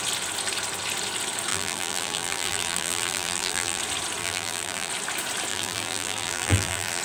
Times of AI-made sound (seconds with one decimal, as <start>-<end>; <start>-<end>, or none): 1.5-3.8; 4.2-4.9; 5.5-7.0